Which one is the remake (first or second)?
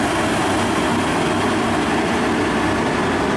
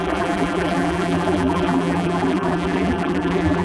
second